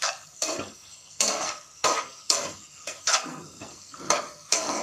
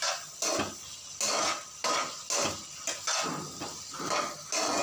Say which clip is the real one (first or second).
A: second